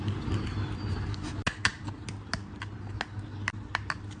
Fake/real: real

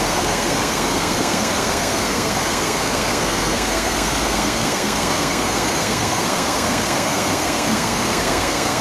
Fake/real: fake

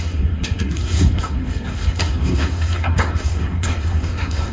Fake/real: fake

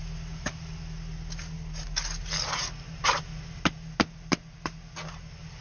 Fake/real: real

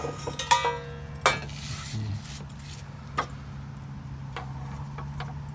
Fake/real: real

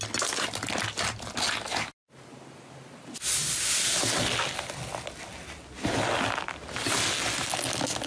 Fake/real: real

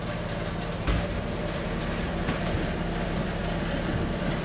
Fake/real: fake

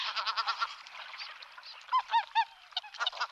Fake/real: real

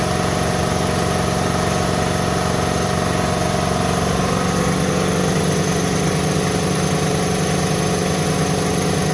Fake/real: real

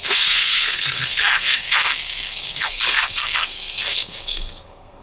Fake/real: fake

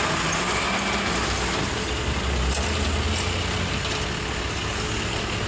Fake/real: real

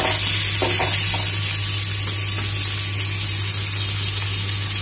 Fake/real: real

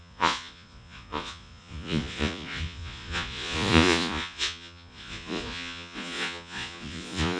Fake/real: fake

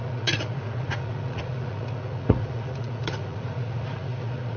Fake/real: fake